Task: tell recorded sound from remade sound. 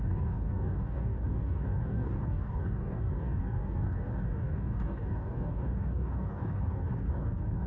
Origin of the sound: remade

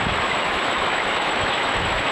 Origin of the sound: remade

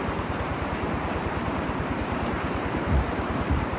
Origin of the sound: remade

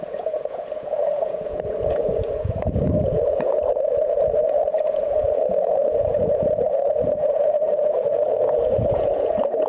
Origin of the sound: remade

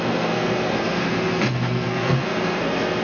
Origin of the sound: remade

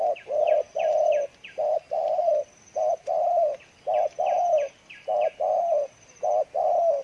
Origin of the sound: recorded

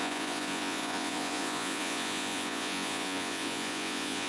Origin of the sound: remade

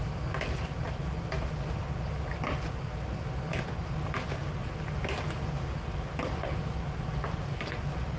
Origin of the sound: recorded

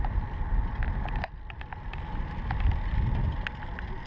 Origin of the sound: recorded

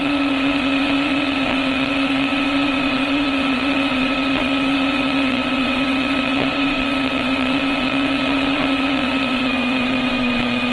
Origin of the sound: remade